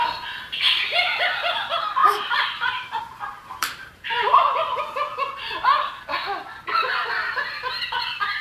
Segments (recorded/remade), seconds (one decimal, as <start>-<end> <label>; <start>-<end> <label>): 0.0-2.0 recorded; 2.0-4.8 remade; 4.8-8.4 recorded